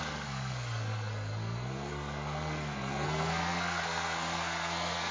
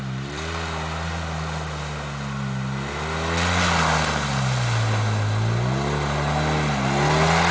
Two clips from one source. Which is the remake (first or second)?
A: first